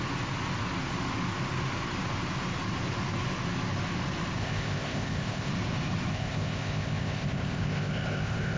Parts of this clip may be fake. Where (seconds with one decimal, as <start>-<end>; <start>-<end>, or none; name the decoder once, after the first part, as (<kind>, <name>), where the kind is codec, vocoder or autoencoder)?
4.4-5.5 (codec, ZipCodec); 6.1-8.6